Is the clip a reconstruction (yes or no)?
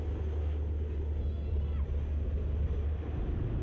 no